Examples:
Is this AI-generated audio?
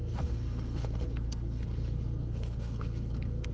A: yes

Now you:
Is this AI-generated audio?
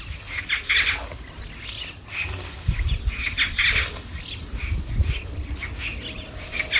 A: no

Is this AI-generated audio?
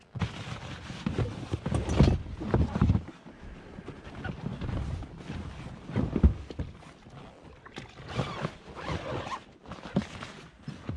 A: no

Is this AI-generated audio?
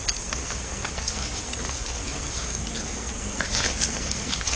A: yes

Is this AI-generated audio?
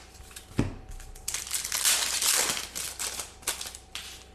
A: no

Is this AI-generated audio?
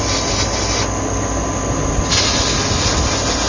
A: no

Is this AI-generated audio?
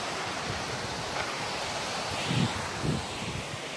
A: no